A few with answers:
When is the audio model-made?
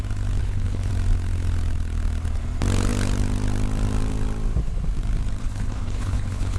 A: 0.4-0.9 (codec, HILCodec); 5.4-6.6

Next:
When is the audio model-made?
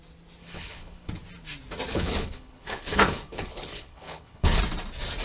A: 0.4-1.1 (codec, HILCodec); 1.9-4.6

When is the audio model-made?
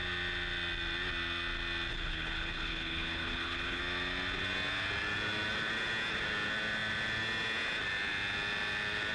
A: 1.9-3.8 (codec, HILCodec)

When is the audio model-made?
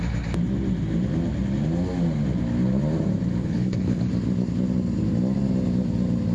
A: 3.4-4.1 (codec, HILCodec)